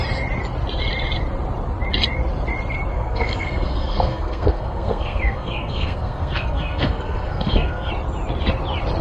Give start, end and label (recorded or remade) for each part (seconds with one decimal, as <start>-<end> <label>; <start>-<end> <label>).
0.0-2.9 recorded; 2.9-7.9 remade; 7.9-9.0 recorded